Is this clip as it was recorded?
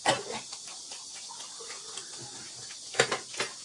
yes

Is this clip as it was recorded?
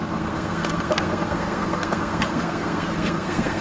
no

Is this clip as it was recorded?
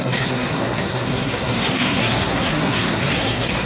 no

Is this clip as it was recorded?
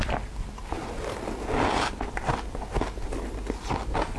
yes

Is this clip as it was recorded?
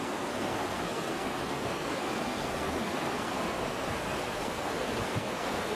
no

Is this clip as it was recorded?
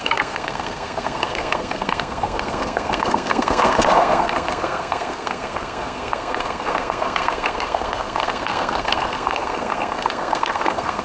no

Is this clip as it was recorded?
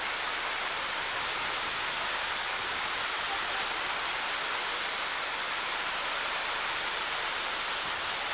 yes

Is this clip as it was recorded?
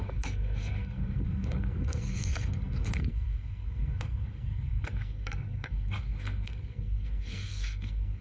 no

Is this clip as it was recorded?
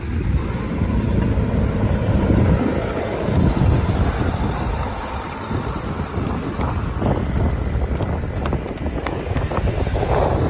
yes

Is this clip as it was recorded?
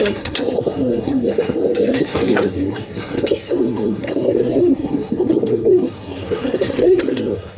no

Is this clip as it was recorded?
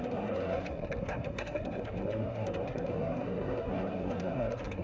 no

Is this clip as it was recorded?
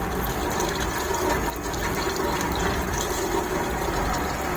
yes